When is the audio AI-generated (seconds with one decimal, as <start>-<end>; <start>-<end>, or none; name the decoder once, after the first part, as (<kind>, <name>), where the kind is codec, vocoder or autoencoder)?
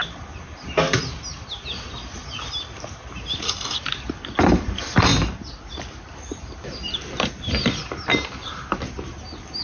none